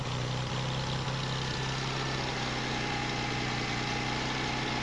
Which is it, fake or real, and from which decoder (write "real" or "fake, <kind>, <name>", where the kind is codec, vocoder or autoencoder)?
real